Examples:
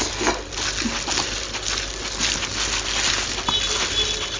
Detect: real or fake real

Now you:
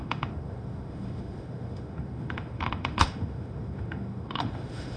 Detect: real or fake fake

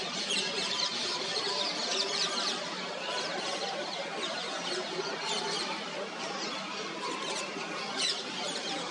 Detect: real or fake fake